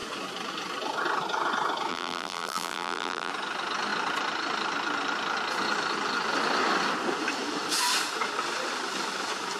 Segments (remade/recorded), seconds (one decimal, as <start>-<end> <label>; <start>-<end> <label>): 0.0-1.9 recorded; 1.9-3.3 remade; 3.3-9.6 recorded